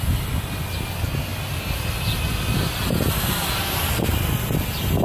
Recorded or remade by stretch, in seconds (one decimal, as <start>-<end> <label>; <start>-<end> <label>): 0.0-5.0 recorded